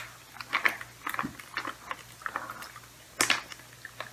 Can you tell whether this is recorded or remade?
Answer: recorded